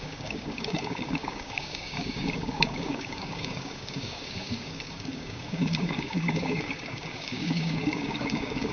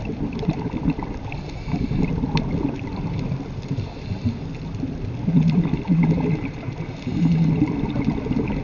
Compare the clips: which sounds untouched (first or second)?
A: second